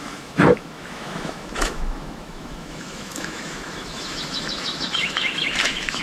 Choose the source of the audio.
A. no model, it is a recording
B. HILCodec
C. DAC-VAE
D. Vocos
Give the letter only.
C